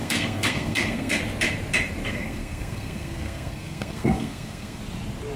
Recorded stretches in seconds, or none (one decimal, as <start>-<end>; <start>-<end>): 1.2-2.1; 4.8-5.4